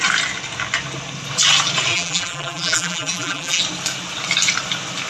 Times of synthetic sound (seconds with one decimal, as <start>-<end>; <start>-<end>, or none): 1.9-3.6